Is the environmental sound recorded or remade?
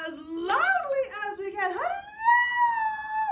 recorded